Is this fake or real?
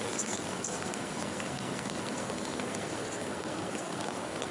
fake